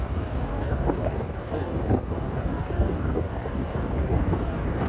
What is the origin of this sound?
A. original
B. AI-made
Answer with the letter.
B